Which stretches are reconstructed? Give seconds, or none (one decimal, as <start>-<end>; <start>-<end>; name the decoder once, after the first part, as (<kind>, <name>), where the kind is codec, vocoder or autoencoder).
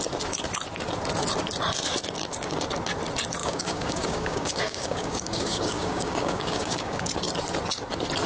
3.4-7.1 (codec, DAC)